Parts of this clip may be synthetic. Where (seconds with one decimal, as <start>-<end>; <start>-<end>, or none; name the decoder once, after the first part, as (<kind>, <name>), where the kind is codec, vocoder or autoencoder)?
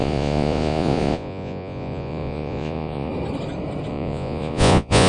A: 0.0-3.1 (vocoder, Vocos); 3.9-5.1